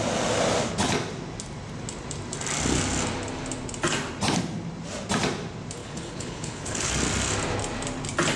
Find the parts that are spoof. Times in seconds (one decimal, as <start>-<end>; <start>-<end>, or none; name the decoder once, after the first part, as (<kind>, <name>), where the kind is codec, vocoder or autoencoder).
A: 5.8-6.9 (codec, HILCodec)